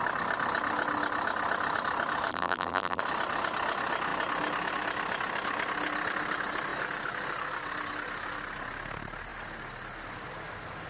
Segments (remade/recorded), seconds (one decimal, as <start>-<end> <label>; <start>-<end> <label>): 0.0-2.3 recorded; 2.3-3.0 remade; 3.0-10.9 recorded